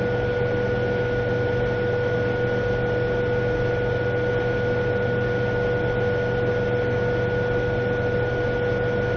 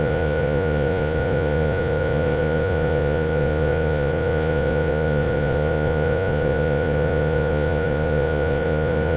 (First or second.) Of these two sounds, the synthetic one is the second